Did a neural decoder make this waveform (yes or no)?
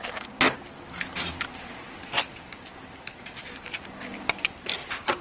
no